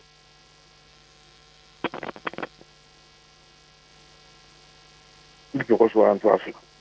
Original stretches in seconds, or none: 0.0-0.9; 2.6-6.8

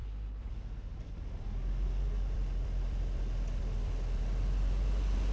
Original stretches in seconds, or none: 0.5-5.3

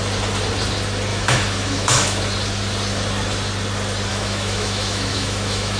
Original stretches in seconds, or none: 0.0-1.1; 2.2-4.1

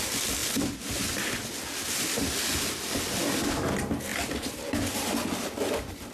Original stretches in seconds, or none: 0.0-4.1; 5.5-6.1

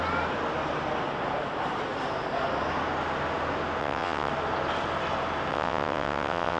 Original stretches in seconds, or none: 0.0-3.8; 4.3-5.5

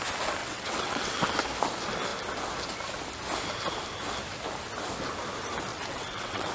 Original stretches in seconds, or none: 0.0-0.4; 1.2-5.7